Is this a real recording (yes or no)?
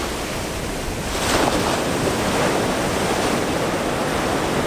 yes